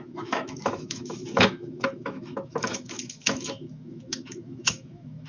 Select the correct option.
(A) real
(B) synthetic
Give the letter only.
B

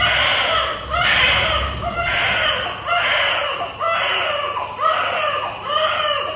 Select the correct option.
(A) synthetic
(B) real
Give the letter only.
B